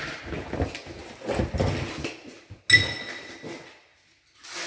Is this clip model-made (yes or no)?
no